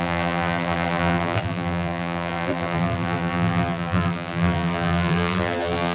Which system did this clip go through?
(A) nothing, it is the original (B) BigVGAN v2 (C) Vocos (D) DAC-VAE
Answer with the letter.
B